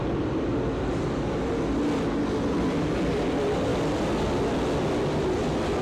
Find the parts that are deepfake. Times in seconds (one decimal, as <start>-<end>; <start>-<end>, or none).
none